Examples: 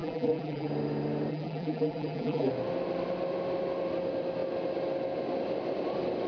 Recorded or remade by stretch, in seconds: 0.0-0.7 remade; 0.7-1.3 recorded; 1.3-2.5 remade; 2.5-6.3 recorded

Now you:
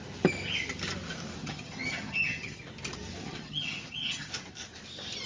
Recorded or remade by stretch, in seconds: 0.0-1.4 recorded; 1.4-2.6 remade; 2.6-3.2 recorded; 3.2-4.3 remade; 4.3-5.3 recorded

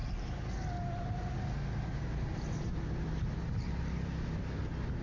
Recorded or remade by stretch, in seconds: 0.0-5.0 recorded

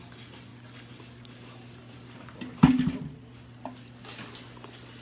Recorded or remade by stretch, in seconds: 0.0-5.0 recorded

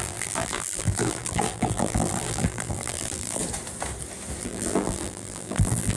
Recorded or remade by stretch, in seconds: 0.0-3.4 remade; 3.4-4.4 recorded; 4.4-6.0 remade

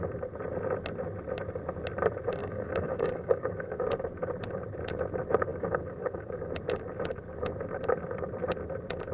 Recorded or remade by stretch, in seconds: 0.0-2.4 recorded; 2.4-4.0 remade; 4.0-5.5 recorded; 5.5-6.5 remade; 6.5-9.1 recorded

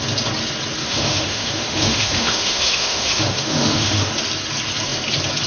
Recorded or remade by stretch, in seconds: 0.0-0.8 recorded; 0.8-4.1 remade; 4.1-5.5 recorded

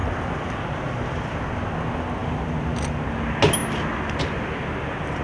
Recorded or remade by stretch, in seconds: 0.0-5.2 recorded